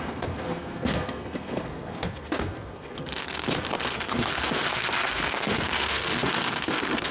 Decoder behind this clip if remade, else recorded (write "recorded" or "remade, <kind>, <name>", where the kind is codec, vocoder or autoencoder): remade, codec, SNAC